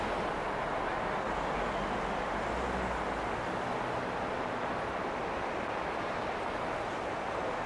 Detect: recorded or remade recorded